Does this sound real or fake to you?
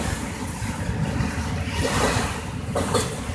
real